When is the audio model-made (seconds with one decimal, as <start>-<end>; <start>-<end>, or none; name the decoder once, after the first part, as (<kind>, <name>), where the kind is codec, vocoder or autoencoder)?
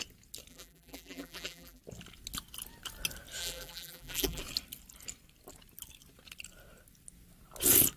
0.5-1.8 (vocoder, BigVGAN v2); 3.4-4.4